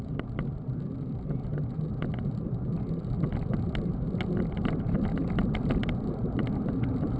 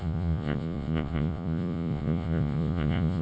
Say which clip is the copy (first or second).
second